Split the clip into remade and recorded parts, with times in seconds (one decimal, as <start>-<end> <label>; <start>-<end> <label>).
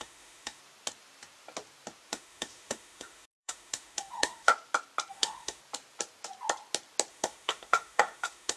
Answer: 0.0-0.6 remade; 0.6-2.1 recorded; 2.1-4.5 remade; 4.5-5.1 recorded; 5.1-5.6 remade; 5.6-7.1 recorded; 7.1-8.6 remade